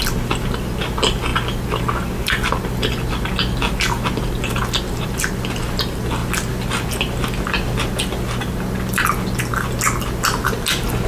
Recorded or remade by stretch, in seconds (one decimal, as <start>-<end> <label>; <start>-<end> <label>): 0.0-11.1 recorded

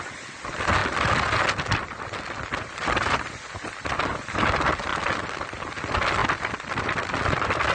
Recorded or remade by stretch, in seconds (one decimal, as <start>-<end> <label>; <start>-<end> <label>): 0.0-7.7 recorded

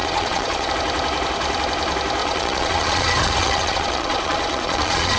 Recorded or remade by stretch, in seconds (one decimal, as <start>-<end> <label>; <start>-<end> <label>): 0.0-0.7 remade; 0.7-2.2 recorded; 2.2-5.2 remade

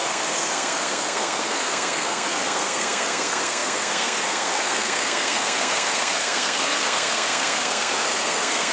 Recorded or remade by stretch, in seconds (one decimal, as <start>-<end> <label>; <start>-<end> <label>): 0.0-8.7 remade

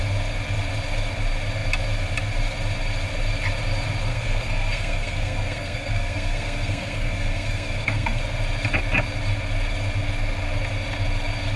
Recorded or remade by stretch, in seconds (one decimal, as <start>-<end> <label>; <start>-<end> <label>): 0.0-4.1 recorded; 4.1-8.2 remade; 8.2-11.6 recorded

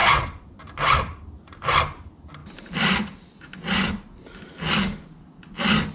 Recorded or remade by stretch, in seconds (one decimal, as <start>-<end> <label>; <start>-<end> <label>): 0.0-1.8 remade; 1.8-2.4 recorded; 2.4-3.6 remade; 3.6-5.9 recorded

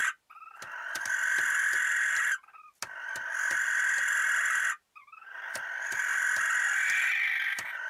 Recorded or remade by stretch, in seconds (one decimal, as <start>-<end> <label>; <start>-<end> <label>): 0.0-7.9 recorded

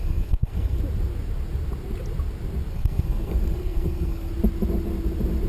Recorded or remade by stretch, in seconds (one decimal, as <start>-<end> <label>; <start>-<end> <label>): 0.0-0.8 remade; 0.8-2.7 recorded; 2.7-4.3 remade; 4.3-5.5 recorded